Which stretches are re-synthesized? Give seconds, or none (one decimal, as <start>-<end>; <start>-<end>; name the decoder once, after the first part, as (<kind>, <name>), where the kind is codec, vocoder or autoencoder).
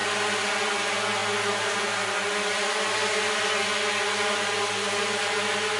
none